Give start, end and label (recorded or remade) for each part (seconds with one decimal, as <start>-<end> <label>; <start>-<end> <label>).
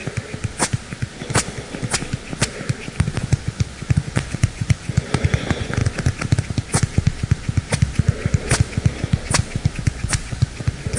0.0-3.2 recorded; 3.2-5.8 remade; 5.8-9.7 recorded; 9.7-11.0 remade